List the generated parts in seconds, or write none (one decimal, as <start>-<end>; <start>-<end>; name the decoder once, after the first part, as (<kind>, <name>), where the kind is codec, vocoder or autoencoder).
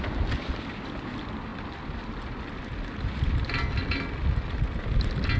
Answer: none